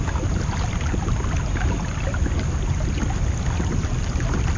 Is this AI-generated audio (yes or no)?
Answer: no